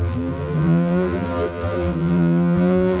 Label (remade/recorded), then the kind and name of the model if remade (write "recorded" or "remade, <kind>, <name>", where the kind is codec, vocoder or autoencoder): remade, vocoder, BigVGAN v2